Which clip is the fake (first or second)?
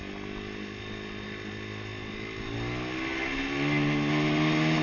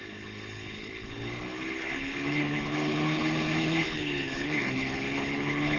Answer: second